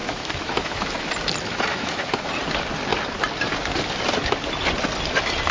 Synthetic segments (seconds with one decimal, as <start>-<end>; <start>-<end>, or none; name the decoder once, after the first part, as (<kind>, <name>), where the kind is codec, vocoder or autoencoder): 0.0-1.1 (autoencoder, DAC-VAE); 1.7-2.3